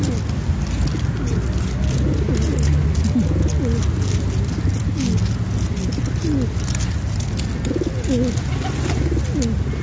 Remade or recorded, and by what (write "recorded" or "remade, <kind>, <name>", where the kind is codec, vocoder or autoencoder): recorded